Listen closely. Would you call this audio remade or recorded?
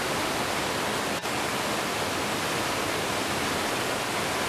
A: recorded